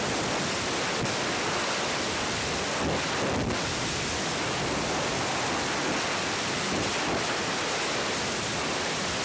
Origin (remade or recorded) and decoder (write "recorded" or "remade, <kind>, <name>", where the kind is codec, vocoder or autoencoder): recorded